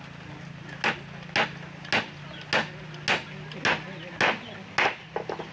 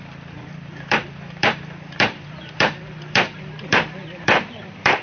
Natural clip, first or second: first